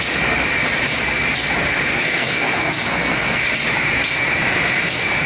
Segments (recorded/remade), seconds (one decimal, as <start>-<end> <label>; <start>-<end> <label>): 0.0-1.9 recorded; 1.9-3.5 remade; 3.5-5.3 recorded